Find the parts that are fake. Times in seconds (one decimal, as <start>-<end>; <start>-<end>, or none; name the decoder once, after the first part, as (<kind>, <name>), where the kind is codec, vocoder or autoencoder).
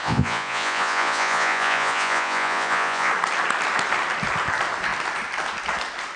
0.0-3.1 (vocoder, Vocos)